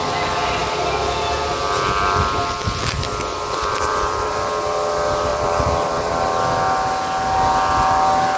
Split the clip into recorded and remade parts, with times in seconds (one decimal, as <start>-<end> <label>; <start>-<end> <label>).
0.0-3.3 recorded; 3.3-4.5 remade; 4.5-5.3 recorded; 5.3-6.1 remade; 6.1-8.4 recorded